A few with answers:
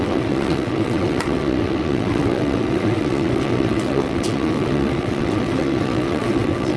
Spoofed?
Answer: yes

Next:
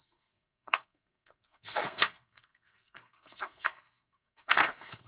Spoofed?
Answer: yes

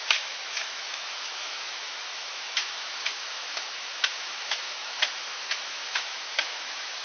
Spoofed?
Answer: yes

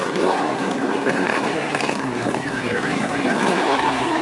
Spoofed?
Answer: yes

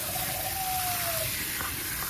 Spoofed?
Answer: yes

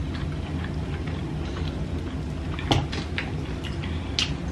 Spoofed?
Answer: no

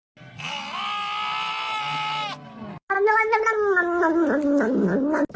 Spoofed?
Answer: no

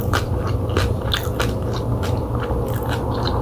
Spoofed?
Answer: no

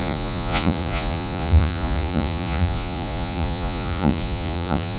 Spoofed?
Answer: yes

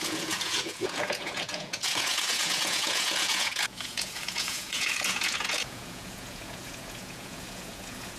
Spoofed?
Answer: yes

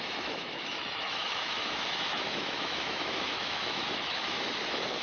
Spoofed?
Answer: yes